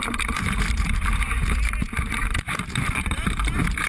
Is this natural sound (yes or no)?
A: no